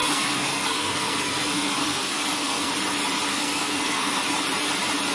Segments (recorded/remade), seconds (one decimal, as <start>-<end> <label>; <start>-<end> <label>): 0.0-2.7 remade; 2.7-3.3 recorded; 3.3-4.2 remade; 4.2-5.1 recorded